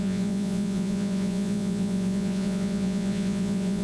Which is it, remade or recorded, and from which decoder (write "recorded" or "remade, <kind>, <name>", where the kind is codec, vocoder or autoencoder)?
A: remade, vocoder, Vocos